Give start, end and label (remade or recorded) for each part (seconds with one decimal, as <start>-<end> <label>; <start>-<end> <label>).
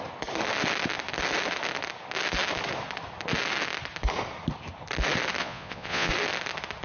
0.0-5.4 recorded; 5.4-6.1 remade; 6.1-6.8 recorded